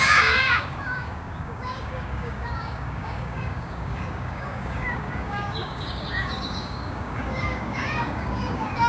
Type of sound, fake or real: fake